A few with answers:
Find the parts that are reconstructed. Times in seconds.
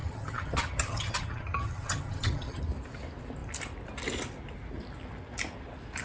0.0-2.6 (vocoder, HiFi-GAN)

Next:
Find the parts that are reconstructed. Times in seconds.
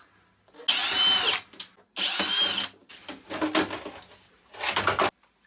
none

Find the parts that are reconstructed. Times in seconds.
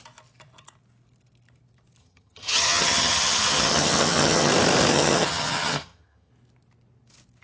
2.0-4.5 (vocoder, HiFi-GAN); 4.9-6.3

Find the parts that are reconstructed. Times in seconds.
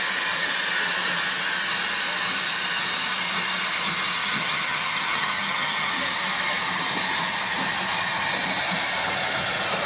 4.2-5.9 (vocoder, HiFi-GAN)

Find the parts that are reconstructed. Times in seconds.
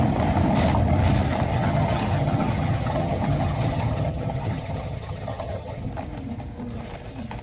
1.5-5.9 (vocoder, HiFi-GAN)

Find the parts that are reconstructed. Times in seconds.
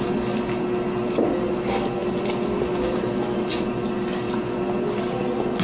none